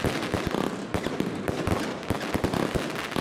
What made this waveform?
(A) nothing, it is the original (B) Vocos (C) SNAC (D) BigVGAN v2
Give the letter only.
A